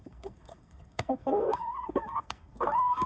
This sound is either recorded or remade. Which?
remade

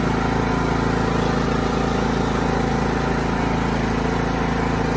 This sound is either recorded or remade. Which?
recorded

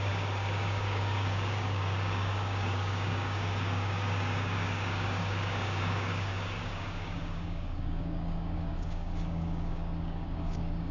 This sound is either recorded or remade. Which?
remade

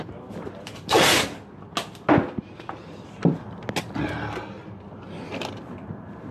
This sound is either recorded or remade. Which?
recorded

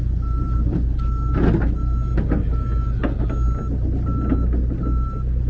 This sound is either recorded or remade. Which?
recorded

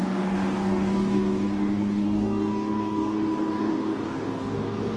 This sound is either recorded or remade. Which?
remade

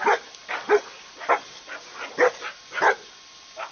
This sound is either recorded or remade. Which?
recorded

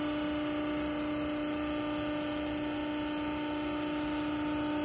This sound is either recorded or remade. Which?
recorded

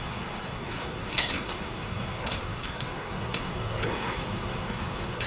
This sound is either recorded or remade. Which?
remade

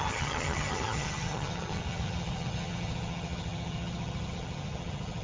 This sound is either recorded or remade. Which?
remade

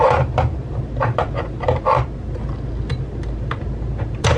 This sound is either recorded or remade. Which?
remade